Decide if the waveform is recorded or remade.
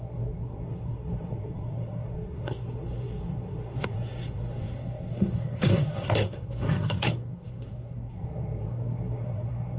remade